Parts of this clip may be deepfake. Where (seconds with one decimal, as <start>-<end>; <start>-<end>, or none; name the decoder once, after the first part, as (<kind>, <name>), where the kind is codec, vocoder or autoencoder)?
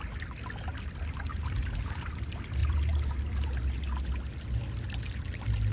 1.3-2.0 (vocoder, BigVGAN v2); 2.6-3.5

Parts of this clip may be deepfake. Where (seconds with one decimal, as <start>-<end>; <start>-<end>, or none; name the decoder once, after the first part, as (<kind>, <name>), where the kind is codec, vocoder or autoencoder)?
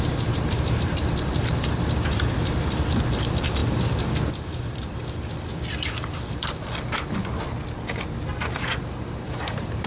0.0-7.2 (vocoder, BigVGAN v2); 9.0-9.9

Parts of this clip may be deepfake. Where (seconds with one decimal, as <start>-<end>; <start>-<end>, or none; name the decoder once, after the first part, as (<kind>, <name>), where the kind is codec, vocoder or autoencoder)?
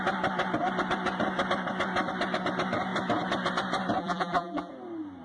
4.0-4.7 (vocoder, BigVGAN v2)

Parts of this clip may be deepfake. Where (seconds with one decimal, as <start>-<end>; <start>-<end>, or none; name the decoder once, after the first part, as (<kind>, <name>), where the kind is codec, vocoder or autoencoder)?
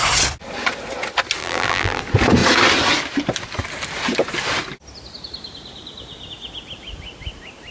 1.4-2.0 (vocoder, BigVGAN v2)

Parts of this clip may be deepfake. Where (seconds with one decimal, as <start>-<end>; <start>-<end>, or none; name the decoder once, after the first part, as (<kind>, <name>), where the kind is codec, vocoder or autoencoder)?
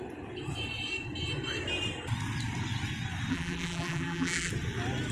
3.3-4.5 (vocoder, BigVGAN v2)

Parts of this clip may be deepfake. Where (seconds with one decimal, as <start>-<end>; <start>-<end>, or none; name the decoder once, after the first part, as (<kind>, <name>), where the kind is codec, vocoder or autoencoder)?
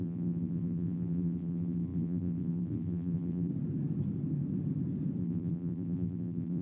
0.0-3.5 (vocoder, BigVGAN v2); 5.2-6.6